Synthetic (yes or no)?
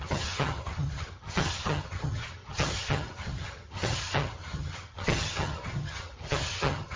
yes